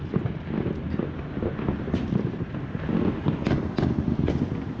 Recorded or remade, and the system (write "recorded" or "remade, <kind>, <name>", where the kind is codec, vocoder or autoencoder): recorded